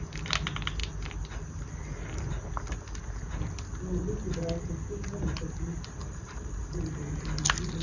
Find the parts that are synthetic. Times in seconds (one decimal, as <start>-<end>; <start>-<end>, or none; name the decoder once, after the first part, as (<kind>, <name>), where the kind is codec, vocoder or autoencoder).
6.0-7.0 (vocoder, BigVGAN v2)